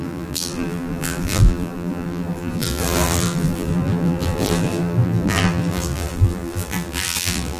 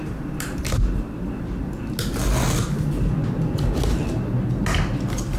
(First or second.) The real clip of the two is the second